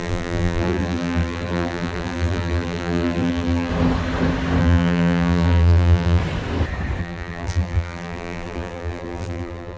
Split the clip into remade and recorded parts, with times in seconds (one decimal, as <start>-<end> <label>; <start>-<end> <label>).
0.0-3.7 remade; 3.7-4.6 recorded; 4.6-6.2 remade; 6.2-7.0 recorded; 7.0-9.8 remade

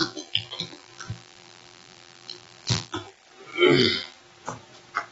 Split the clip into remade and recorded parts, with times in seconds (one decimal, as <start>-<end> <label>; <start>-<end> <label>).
0.0-3.1 remade; 3.1-3.5 recorded; 3.5-4.2 remade; 4.2-5.1 recorded

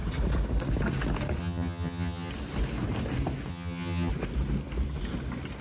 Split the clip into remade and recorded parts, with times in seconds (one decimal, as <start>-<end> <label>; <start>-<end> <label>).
0.0-1.4 recorded; 1.4-2.3 remade; 2.3-3.5 recorded; 3.5-4.1 remade; 4.1-5.6 recorded

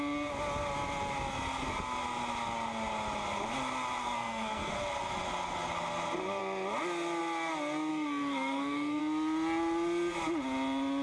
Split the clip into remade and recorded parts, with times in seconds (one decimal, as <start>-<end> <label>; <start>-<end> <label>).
0.0-4.0 recorded; 4.0-4.7 remade; 4.7-7.9 recorded; 7.9-9.0 remade; 9.0-11.0 recorded

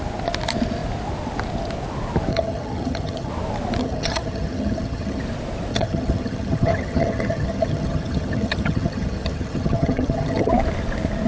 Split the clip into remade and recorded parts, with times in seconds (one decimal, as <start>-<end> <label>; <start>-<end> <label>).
0.0-2.3 recorded; 2.3-3.3 remade; 3.3-3.8 recorded; 3.8-5.2 remade; 5.2-5.7 recorded; 5.7-10.5 remade; 10.5-11.3 recorded

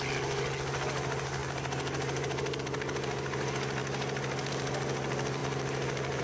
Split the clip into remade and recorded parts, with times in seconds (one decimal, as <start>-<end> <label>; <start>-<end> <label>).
0.0-6.2 recorded